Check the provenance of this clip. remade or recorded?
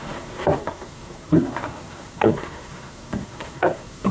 remade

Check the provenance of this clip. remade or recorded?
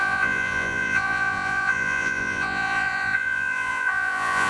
remade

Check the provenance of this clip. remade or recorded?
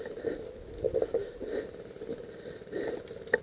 recorded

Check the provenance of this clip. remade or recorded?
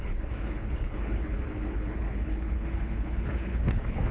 remade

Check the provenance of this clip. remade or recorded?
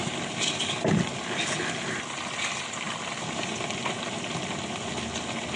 recorded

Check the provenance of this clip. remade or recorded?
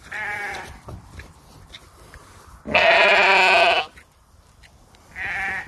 remade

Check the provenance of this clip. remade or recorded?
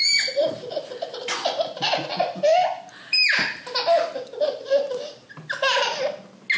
recorded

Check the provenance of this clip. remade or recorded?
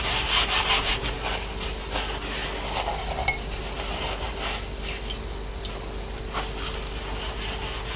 recorded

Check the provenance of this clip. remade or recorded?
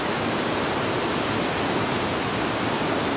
recorded